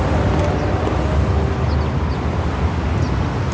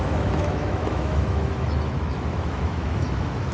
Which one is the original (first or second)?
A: first